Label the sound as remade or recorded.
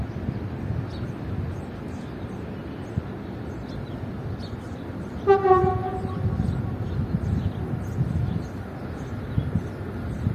recorded